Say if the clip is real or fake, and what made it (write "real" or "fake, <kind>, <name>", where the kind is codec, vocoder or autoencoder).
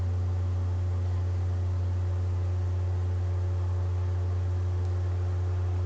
real